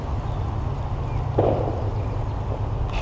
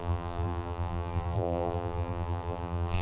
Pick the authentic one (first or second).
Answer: first